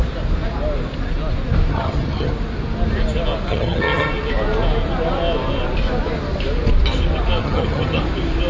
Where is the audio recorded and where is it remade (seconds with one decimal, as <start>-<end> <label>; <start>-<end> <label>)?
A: 0.0-1.7 recorded; 1.7-2.3 remade; 2.3-3.5 recorded; 3.5-4.1 remade; 4.1-7.4 recorded; 7.4-8.0 remade; 8.0-8.5 recorded